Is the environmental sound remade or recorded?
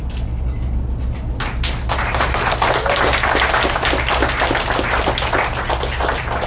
recorded